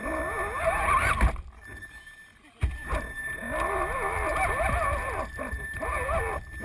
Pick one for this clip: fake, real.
real